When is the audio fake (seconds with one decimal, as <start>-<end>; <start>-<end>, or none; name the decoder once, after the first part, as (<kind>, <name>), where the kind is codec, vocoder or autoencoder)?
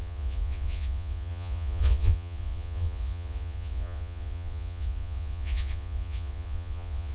0.0-7.1 (vocoder, Vocos)